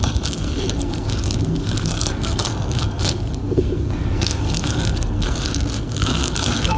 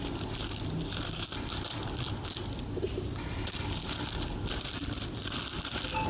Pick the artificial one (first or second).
first